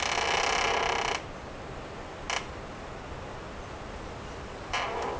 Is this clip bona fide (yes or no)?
yes